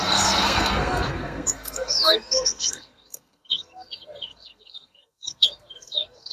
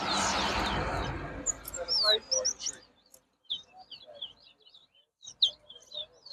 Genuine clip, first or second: second